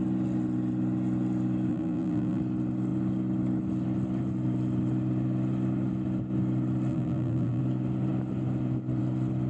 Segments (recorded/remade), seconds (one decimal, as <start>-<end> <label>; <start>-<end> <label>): 0.0-1.7 recorded; 1.7-2.4 remade; 2.4-6.9 recorded; 6.9-7.6 remade; 7.6-9.5 recorded